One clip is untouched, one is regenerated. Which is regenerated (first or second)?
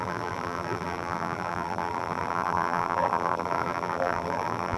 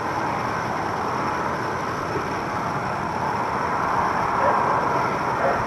first